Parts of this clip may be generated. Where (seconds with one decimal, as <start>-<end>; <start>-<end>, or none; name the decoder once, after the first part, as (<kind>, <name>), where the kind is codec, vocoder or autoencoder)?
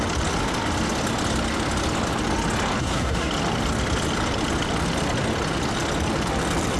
2.8-3.3 (codec, SNAC)